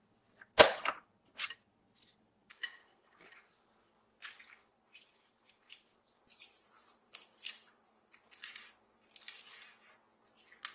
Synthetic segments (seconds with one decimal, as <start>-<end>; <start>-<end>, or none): 0.7-1.7; 2.1-3.7; 4.7-8.5